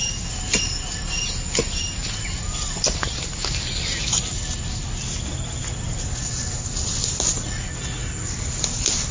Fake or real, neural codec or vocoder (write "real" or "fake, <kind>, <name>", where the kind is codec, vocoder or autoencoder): real